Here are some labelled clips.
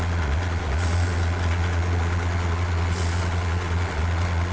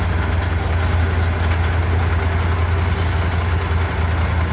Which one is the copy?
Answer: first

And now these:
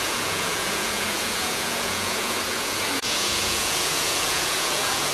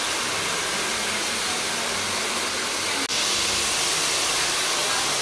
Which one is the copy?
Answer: first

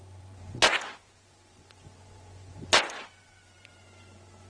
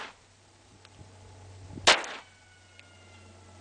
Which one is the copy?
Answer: first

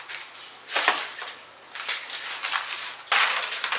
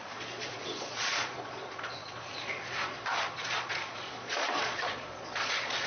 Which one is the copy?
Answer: second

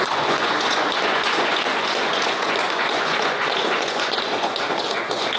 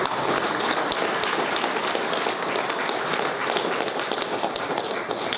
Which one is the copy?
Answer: first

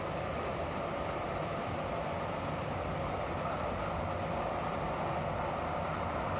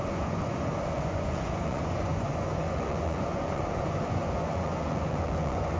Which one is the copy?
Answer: second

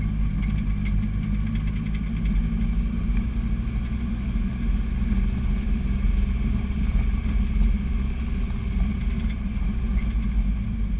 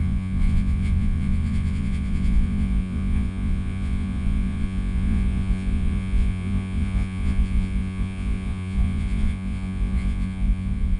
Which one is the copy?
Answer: second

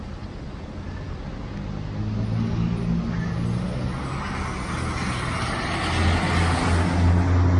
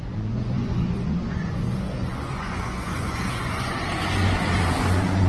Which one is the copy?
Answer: second